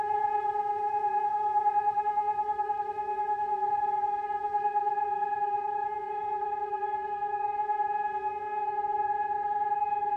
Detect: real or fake fake